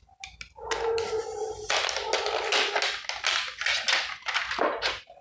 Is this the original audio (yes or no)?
yes